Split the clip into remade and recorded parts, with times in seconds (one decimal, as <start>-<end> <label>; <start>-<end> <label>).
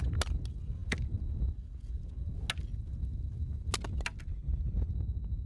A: 0.0-4.3 recorded; 4.3-4.9 remade; 4.9-5.5 recorded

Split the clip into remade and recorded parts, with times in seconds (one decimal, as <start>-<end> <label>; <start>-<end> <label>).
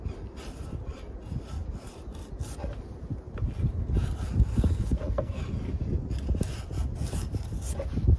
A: 0.0-4.5 recorded; 4.5-5.4 remade; 5.4-8.2 recorded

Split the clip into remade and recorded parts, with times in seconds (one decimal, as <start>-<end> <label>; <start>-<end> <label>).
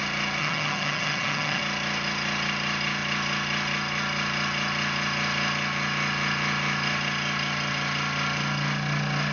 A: 0.0-0.4 recorded; 0.4-1.6 remade; 1.6-9.3 recorded